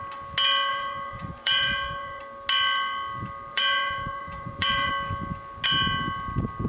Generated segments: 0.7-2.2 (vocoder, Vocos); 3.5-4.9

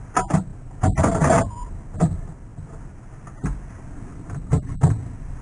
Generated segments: none

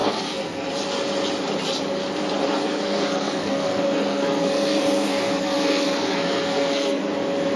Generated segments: 0.0-0.7 (codec, SNAC); 2.5-7.1